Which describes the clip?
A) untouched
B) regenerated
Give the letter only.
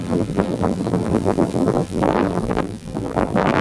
B